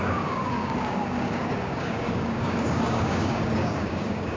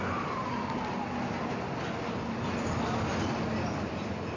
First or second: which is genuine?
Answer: second